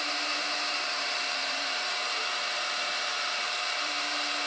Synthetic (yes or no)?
yes